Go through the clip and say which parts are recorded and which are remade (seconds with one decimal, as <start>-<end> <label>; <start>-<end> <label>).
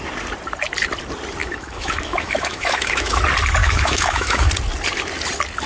0.0-1.4 recorded; 1.4-3.2 remade; 3.2-3.6 recorded; 3.6-4.5 remade; 4.5-5.7 recorded